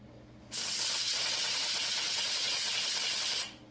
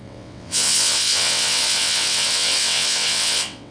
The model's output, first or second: second